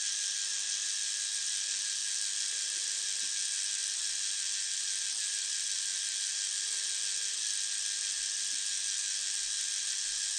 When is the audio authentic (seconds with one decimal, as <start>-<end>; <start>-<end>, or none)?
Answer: 0.0-10.4